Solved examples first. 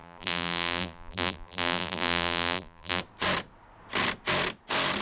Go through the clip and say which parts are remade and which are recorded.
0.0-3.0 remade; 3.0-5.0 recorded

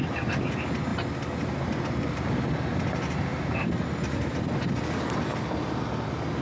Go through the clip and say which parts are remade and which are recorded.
0.0-6.4 recorded

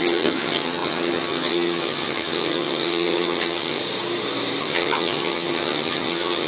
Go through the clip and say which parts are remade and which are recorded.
0.0-3.8 remade; 3.8-4.6 recorded; 4.6-6.5 remade

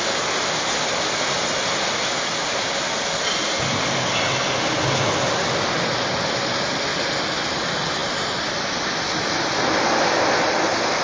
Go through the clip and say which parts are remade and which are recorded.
0.0-11.0 recorded

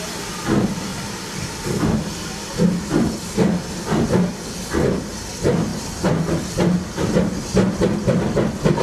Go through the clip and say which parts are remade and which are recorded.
0.0-0.9 recorded; 0.9-1.6 remade; 1.6-8.8 recorded